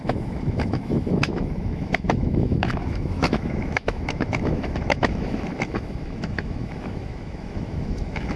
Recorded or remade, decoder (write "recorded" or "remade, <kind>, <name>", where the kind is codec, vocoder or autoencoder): remade, autoencoder, DAC-VAE